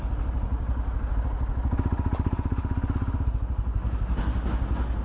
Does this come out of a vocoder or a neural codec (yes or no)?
no